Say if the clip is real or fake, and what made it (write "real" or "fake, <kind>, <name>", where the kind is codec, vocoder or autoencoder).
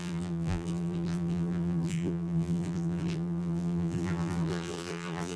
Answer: fake, vocoder, BigVGAN v2